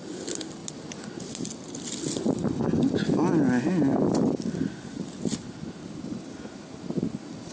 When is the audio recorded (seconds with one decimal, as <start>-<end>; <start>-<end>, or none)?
0.0-7.5